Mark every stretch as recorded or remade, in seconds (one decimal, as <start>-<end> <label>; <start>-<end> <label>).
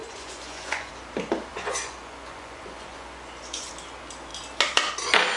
0.0-0.9 remade; 0.9-1.5 recorded; 1.5-3.7 remade; 3.7-5.4 recorded